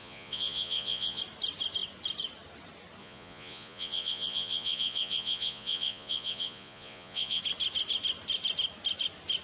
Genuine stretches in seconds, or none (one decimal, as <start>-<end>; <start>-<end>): 1.2-3.0; 7.4-9.4